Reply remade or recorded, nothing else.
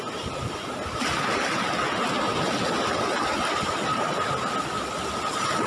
recorded